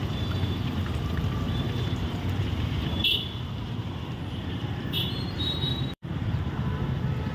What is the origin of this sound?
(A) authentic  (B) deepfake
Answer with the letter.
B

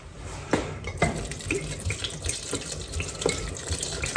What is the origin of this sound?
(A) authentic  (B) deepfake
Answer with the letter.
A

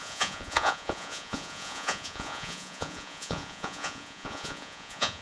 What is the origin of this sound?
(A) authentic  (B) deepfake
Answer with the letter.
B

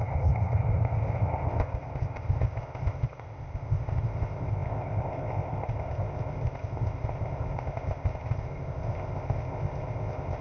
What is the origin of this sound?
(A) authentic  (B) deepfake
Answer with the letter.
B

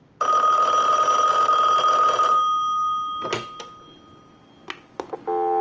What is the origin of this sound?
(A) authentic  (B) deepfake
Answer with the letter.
A